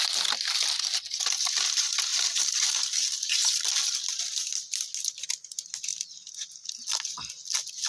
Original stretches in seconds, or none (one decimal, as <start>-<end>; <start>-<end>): 0.0-2.1; 4.1-5.9; 6.7-7.9